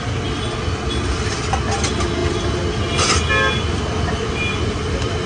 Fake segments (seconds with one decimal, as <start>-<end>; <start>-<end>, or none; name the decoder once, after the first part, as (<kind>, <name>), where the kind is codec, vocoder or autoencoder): none